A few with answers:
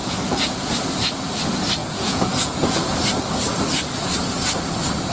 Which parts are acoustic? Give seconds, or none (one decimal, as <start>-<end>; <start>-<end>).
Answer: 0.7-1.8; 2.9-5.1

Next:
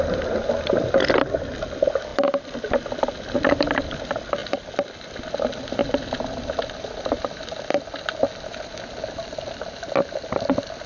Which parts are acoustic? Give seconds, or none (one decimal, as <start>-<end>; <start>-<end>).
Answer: 0.0-10.9

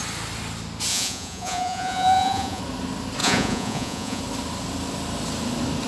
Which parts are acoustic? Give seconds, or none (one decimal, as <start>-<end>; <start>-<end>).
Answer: 0.0-0.9; 2.6-3.2; 4.2-5.9

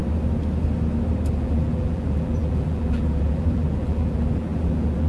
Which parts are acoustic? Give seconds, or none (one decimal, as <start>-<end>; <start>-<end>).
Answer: 0.0-1.3

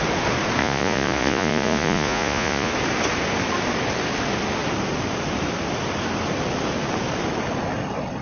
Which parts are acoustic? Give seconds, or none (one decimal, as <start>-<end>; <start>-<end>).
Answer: 0.0-0.6; 2.7-8.2

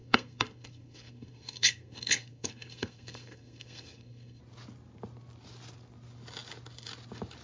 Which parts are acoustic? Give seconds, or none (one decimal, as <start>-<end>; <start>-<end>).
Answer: 4.4-7.4

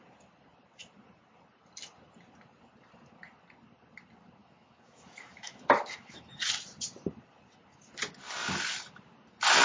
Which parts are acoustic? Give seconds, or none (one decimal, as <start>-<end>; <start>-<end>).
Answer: 0.0-4.4; 6.5-9.6